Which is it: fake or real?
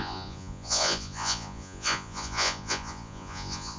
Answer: fake